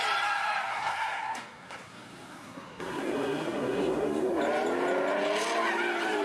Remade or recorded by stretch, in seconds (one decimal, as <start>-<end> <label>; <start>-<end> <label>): 0.0-0.7 recorded; 0.7-4.4 remade; 4.4-6.2 recorded